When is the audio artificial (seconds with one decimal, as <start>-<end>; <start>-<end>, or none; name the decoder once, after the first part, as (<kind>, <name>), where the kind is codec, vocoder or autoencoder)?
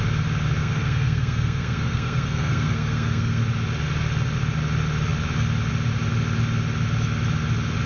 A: 0.6-3.4 (codec, SNAC)